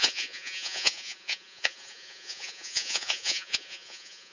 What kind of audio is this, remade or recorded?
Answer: remade